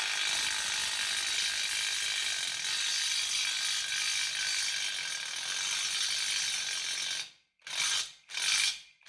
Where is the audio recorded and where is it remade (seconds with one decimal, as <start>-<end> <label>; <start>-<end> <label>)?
0.0-9.1 recorded